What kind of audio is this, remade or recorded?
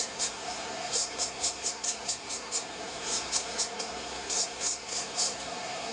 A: remade